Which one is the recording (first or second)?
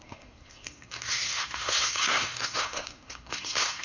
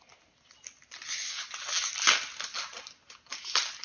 second